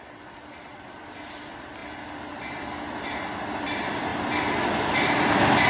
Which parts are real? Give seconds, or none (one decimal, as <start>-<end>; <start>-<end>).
0.0-5.7